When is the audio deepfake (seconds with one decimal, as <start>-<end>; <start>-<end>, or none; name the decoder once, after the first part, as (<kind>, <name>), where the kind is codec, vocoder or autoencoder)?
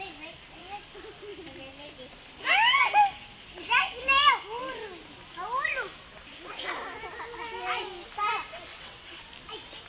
8.7-9.2 (vocoder, WaveNeXt)